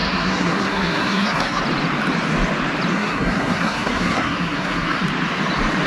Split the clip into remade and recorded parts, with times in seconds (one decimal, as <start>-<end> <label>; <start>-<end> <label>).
0.0-1.6 remade; 1.6-2.9 recorded; 2.9-5.0 remade; 5.0-5.9 recorded